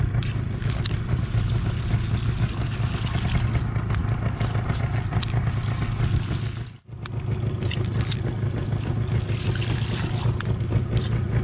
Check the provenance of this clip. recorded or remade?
recorded